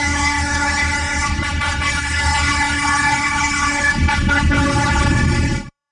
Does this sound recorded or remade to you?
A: remade